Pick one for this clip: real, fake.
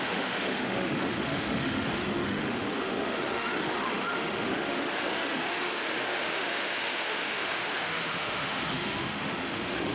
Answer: fake